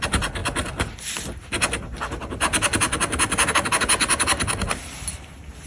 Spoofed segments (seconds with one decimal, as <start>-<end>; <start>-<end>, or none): none